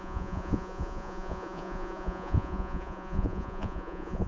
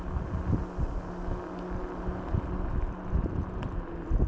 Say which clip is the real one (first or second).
second